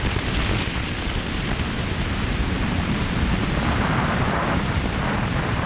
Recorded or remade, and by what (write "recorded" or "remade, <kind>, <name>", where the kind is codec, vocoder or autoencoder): recorded